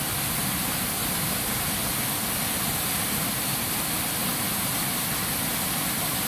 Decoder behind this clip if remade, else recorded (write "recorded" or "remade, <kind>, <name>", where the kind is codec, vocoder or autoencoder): recorded